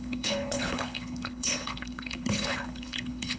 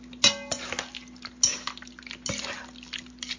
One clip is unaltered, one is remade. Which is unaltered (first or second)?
second